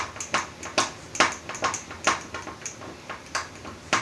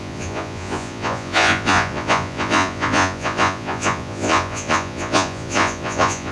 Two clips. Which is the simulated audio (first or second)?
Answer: second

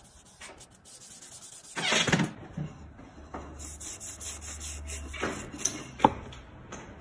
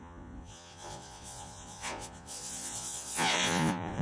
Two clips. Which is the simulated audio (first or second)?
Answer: second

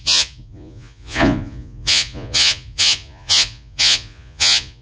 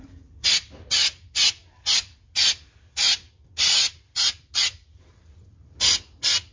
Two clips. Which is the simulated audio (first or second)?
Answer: first